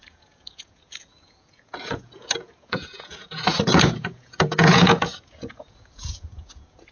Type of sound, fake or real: fake